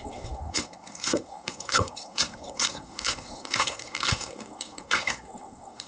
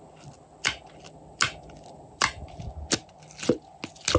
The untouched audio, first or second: second